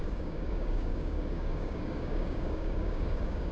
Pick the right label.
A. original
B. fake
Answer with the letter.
B